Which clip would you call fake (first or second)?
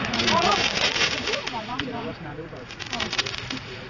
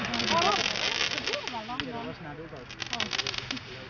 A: first